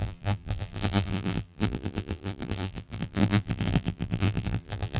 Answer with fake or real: fake